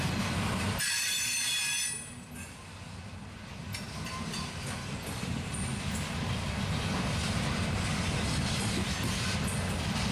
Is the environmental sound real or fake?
real